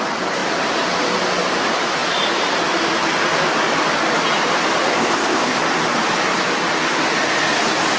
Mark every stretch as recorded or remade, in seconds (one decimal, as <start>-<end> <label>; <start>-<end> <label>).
0.0-4.9 recorded; 4.9-5.6 remade; 5.6-8.0 recorded